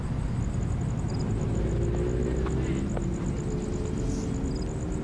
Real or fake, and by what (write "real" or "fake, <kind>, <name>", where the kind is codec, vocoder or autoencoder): real